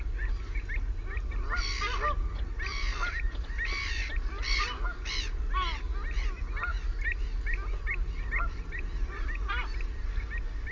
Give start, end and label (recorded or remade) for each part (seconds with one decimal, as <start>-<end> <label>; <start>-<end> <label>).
0.0-10.7 recorded